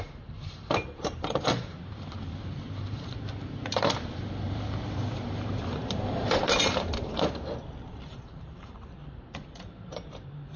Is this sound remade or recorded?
remade